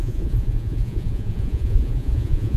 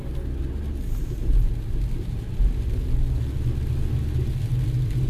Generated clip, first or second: first